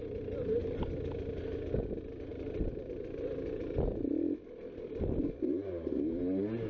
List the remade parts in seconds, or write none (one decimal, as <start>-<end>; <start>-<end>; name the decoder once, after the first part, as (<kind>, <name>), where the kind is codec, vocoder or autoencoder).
2.3-6.2 (vocoder, BigVGAN v2)